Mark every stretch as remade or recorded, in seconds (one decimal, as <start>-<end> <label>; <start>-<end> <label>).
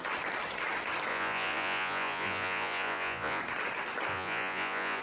0.0-1.1 recorded; 1.1-3.4 remade; 3.4-4.1 recorded; 4.1-5.0 remade